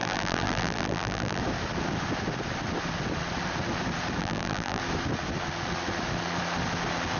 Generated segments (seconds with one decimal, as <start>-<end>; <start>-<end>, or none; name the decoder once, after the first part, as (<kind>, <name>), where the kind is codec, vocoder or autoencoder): 0.0-1.4 (vocoder, BigVGAN v2); 4.2-4.8